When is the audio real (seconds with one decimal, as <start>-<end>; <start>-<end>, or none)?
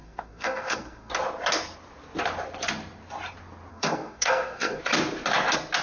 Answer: 1.1-3.7; 4.8-5.8